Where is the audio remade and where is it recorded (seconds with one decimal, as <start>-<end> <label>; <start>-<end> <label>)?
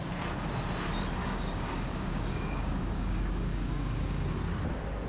0.0-1.2 recorded; 1.2-4.3 remade; 4.3-5.1 recorded